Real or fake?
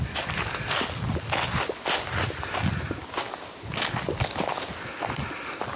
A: real